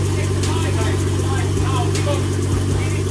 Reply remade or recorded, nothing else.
recorded